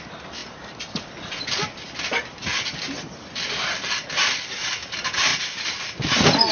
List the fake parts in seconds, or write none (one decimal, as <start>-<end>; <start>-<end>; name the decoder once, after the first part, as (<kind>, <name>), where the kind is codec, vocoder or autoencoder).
0.4-1.1 (vocoder, BigVGAN v2); 2.5-4.4; 5.3-6.0